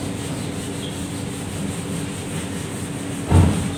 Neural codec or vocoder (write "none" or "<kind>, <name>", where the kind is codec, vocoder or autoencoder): none